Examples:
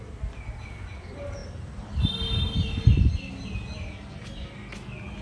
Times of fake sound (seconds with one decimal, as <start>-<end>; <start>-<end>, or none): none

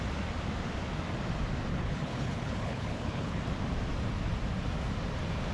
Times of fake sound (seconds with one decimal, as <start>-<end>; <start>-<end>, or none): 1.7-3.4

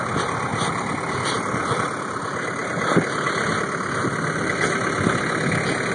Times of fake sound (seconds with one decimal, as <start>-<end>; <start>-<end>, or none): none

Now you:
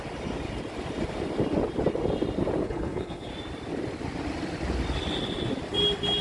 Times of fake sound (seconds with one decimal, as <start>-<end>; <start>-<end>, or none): 2.6-3.3